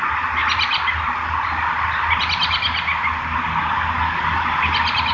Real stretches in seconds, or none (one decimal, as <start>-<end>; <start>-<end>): 0.0-5.1

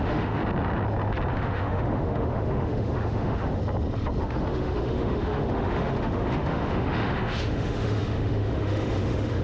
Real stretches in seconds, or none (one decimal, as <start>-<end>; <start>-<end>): 0.4-1.3; 3.6-4.2

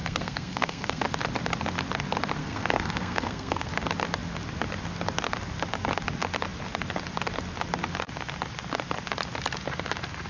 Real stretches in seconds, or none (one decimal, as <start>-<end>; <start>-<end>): 1.0-2.4; 3.7-10.3

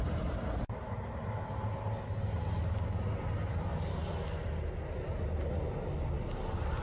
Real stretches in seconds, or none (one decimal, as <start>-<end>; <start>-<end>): 0.0-6.8

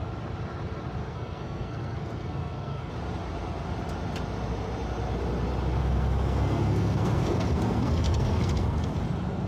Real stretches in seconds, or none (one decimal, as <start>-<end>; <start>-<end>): 0.0-1.0; 2.9-5.8; 9.0-9.5